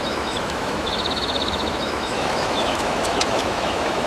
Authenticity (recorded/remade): remade